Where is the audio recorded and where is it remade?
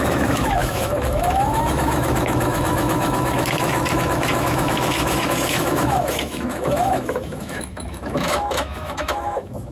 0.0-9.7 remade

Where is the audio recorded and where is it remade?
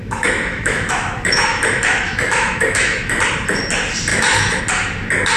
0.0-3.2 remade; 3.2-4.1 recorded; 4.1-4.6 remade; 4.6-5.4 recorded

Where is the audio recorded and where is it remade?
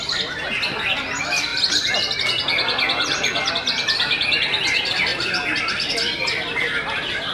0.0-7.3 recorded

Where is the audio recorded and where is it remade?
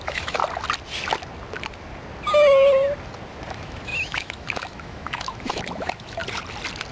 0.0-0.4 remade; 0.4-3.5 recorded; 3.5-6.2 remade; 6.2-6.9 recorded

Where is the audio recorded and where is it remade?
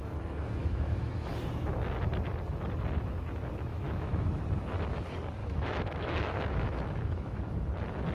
0.0-0.6 recorded; 0.6-1.3 remade; 1.3-3.7 recorded; 3.7-4.4 remade; 4.4-5.4 recorded; 5.4-7.4 remade; 7.4-8.1 recorded